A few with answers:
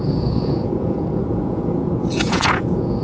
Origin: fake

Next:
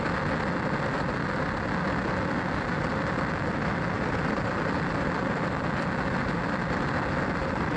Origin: real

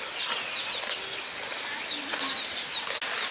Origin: real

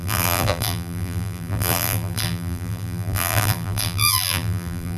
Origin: fake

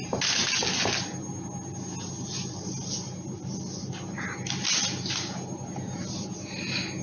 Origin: real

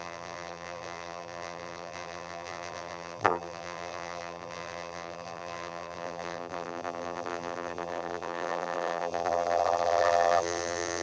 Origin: fake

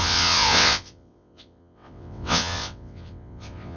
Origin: fake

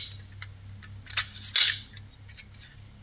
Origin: real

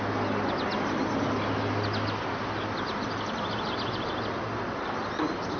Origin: real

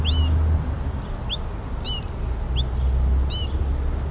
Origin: real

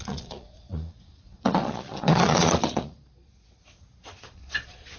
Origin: fake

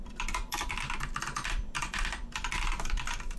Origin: fake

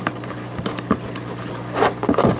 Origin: real